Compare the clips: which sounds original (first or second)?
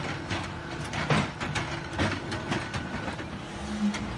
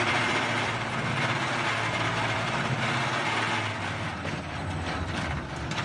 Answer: first